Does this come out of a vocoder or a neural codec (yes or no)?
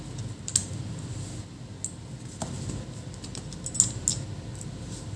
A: no